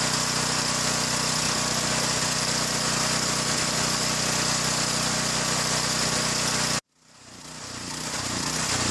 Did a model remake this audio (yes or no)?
no